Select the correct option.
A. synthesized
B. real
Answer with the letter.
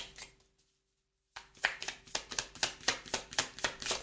B